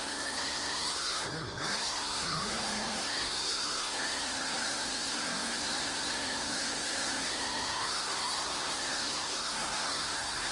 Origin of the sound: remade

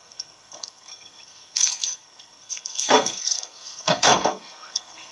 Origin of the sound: remade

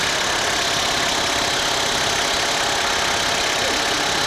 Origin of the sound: recorded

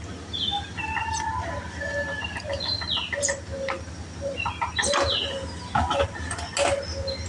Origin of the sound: recorded